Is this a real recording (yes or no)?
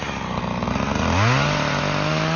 yes